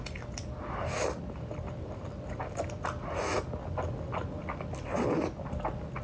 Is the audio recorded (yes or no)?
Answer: yes